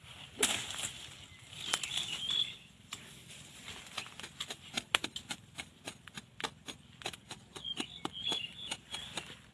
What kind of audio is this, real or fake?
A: real